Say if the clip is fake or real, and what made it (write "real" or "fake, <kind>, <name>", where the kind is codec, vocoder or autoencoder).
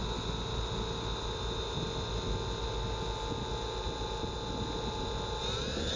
real